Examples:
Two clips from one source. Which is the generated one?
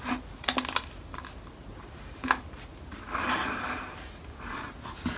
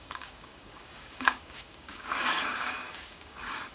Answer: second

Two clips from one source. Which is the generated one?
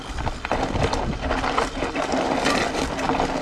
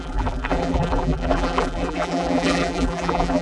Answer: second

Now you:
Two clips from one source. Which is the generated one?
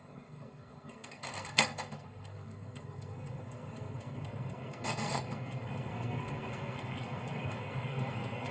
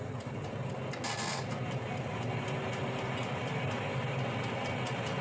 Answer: first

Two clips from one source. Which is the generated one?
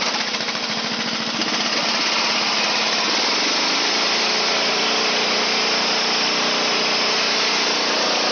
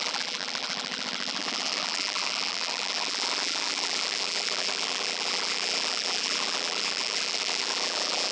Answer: second